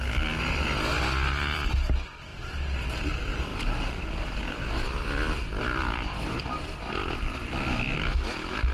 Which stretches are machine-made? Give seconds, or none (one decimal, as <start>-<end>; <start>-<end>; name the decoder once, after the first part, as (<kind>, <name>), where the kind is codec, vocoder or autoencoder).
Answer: 2.3-3.1 (vocoder, BigVGAN v2); 3.5-4.7; 5.6-6.4